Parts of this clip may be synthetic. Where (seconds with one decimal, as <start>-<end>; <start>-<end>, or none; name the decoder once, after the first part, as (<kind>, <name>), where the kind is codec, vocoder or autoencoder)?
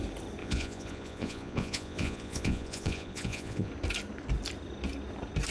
0.4-3.7 (vocoder, Vocos)